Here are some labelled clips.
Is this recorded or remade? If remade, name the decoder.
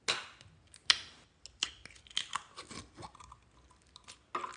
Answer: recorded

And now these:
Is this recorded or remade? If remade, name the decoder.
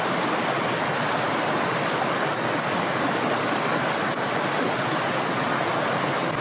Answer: recorded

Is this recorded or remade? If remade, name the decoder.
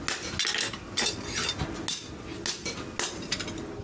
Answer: recorded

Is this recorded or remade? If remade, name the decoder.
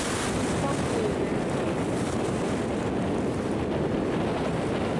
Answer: recorded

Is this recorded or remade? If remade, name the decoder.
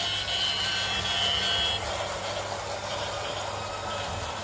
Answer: recorded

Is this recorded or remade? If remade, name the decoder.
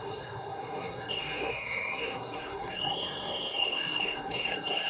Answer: remade, codec, SNAC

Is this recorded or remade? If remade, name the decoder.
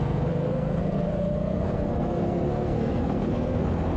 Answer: remade, codec, SNAC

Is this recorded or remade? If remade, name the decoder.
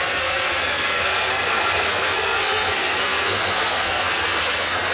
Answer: remade, codec, SNAC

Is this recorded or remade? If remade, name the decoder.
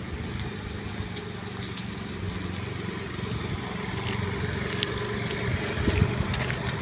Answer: recorded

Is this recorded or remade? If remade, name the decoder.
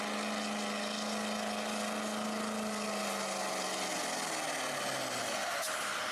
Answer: recorded